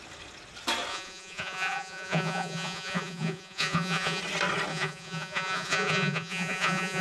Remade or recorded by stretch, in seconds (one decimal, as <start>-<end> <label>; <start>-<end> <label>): 0.0-0.9 recorded; 0.9-4.2 remade; 4.2-4.7 recorded; 4.7-7.0 remade

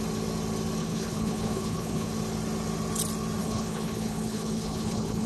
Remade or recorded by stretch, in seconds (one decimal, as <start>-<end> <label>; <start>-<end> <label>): 0.0-0.8 recorded; 0.8-2.1 remade; 2.1-3.4 recorded; 3.4-5.3 remade

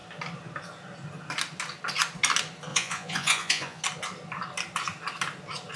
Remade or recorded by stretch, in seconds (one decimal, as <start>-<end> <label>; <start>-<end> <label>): 0.0-2.7 recorded; 2.7-3.8 remade; 3.8-5.8 recorded